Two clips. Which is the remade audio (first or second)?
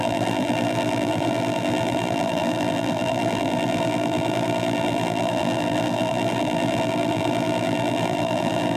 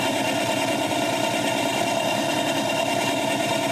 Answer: first